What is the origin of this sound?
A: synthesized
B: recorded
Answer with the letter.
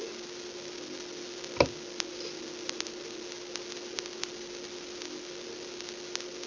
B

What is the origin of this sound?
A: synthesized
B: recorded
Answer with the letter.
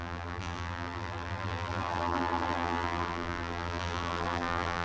A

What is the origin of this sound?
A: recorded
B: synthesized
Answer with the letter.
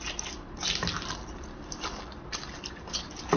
B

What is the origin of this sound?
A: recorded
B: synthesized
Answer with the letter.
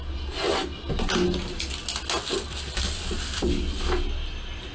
A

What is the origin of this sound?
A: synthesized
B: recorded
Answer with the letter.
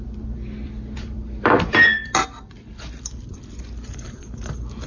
A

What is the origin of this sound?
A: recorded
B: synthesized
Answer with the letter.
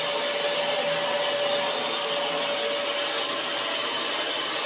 A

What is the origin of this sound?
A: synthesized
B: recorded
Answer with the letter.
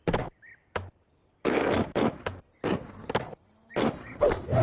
B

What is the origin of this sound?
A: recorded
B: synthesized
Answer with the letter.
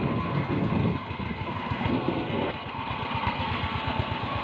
B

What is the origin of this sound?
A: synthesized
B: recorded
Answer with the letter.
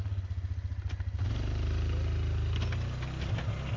B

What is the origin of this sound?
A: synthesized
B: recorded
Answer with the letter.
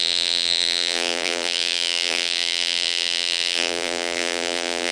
A